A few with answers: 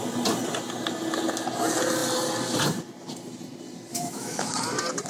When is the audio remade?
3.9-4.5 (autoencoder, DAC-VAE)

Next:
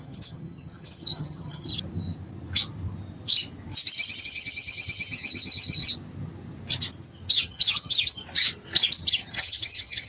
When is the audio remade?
0.0-1.7 (vocoder, HiFi-GAN); 4.2-5.8; 7.3-8.2; 9.1-10.1

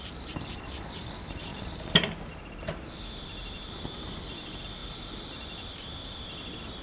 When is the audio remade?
1.5-2.4 (vocoder, BigVGAN v2)

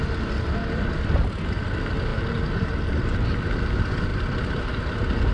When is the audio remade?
4.1-5.3 (vocoder, BigVGAN v2)

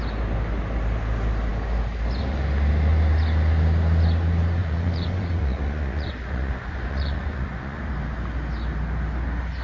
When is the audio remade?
4.6-7.8 (vocoder, Vocos)

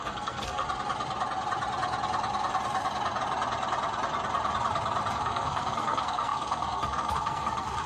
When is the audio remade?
0.0-0.6 (codec, SNAC); 5.1-7.9

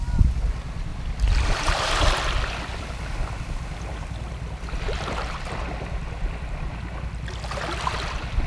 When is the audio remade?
0.9-2.0 (vocoder, BigVGAN v2); 2.7-5.6

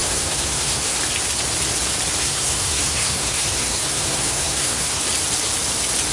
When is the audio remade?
0.0-1.0 (codec, SNAC); 2.2-5.0